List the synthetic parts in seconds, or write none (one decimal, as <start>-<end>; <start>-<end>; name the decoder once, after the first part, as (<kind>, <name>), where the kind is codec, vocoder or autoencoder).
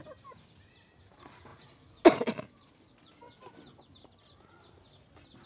none